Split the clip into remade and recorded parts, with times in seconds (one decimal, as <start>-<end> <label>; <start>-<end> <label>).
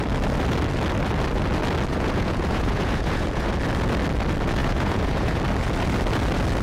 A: 0.0-1.9 recorded; 1.9-3.5 remade; 3.5-4.6 recorded; 4.6-5.4 remade; 5.4-6.6 recorded